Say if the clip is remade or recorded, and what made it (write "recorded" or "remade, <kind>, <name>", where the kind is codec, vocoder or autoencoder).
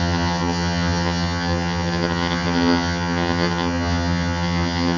remade, vocoder, HiFi-GAN